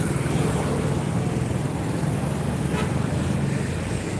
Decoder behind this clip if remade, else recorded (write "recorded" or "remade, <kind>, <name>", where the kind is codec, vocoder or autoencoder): recorded